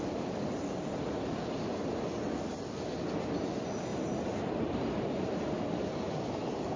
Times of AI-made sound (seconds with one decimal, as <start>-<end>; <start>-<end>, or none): 3.9-6.8